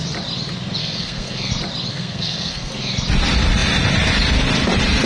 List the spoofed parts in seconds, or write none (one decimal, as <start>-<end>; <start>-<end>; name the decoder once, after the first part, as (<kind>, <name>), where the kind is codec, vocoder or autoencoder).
0.8-1.5 (codec, SNAC); 1.9-2.7